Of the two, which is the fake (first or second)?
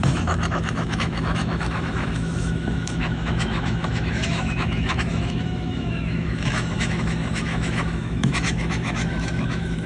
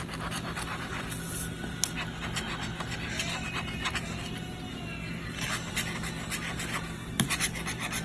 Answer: first